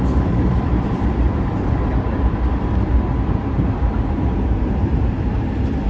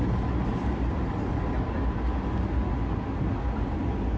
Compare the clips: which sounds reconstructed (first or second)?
first